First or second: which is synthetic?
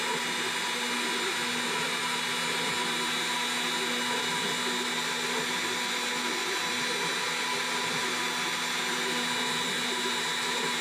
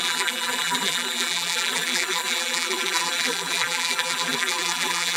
second